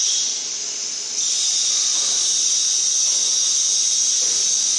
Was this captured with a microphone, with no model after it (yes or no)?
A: yes